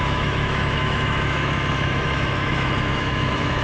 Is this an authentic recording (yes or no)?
no